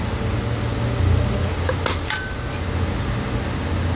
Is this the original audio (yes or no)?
yes